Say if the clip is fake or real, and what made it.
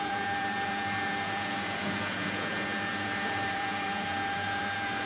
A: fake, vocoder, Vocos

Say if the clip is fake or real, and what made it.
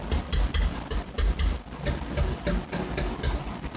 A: real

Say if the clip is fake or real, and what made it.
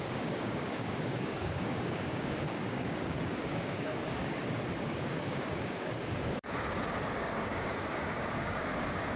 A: fake, codec, DAC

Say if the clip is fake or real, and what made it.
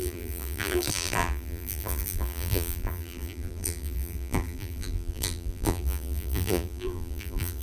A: fake, vocoder, BigVGAN v2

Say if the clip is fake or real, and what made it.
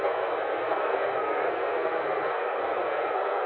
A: fake, codec, SNAC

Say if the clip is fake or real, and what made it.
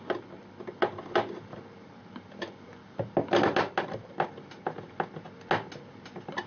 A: real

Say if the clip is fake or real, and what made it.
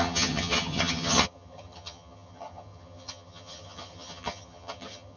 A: fake, vocoder, HiFi-GAN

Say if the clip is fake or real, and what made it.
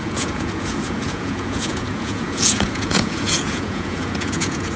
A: fake, vocoder, Vocos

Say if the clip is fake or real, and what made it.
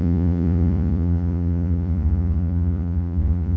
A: fake, vocoder, Vocos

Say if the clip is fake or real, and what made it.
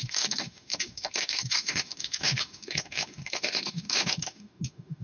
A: fake, autoencoder, DAC-VAE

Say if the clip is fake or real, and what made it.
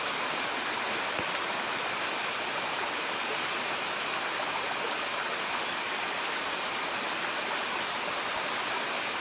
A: real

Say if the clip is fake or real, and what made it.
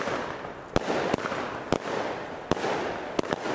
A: real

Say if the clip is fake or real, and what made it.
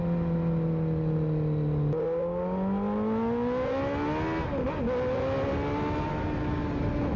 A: real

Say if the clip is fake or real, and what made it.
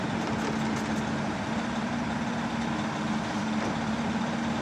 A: real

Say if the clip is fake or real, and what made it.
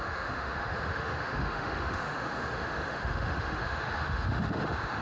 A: fake, autoencoder, DAC-VAE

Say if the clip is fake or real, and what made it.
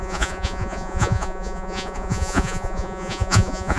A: fake, vocoder, Vocos